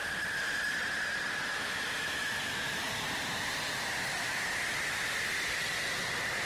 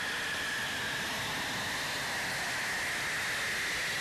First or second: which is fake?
first